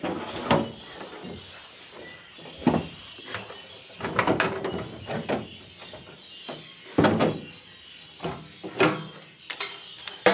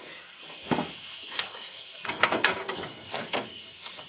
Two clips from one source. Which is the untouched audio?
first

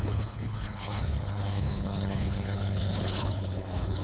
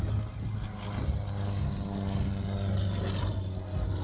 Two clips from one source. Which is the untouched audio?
second